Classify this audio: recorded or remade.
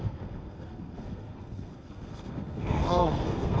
remade